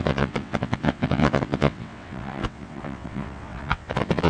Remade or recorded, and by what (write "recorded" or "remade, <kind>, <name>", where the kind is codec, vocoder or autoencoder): remade, vocoder, WaveNeXt